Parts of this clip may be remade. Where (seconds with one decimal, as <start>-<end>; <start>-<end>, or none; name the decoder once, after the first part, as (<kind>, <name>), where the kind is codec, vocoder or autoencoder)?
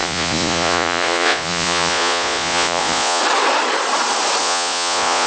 0.0-3.2 (vocoder, Vocos); 4.4-5.3